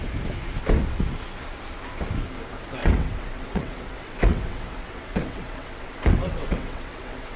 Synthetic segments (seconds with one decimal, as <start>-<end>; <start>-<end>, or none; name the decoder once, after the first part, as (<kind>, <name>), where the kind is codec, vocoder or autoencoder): 2.8-7.4 (vocoder, WaveNeXt)